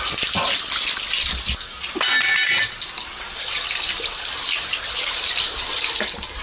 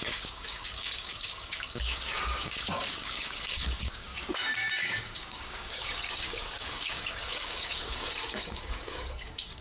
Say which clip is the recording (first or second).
first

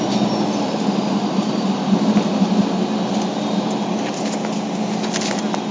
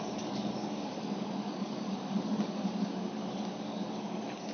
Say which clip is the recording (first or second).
first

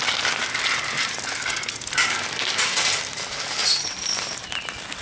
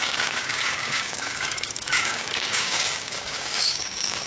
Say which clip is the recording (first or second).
first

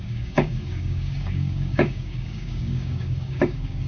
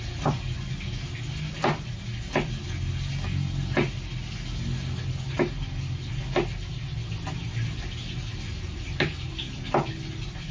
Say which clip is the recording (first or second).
second